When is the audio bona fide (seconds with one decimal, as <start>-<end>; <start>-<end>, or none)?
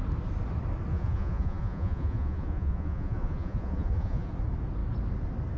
0.0-0.9; 4.3-5.6